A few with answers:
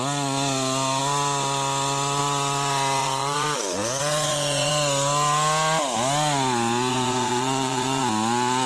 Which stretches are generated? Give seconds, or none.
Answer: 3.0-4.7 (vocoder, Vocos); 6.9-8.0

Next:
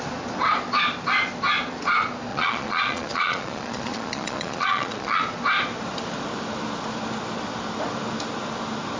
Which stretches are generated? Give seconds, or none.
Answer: 2.3-5.2 (vocoder, Vocos)

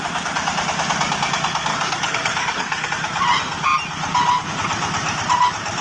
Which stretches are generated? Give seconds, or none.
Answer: 1.7-2.9 (codec, DAC)

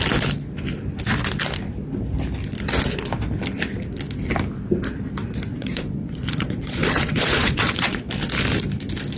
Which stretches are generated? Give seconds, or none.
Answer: 5.5-8.0 (vocoder, Vocos)

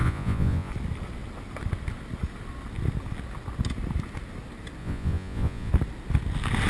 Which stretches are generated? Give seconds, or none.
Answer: 0.0-0.7 (vocoder, Vocos); 4.8-5.7